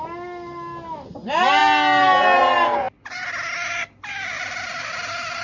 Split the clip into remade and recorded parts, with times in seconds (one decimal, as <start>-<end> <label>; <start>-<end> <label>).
0.0-5.4 recorded